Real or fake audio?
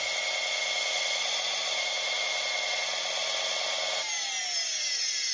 real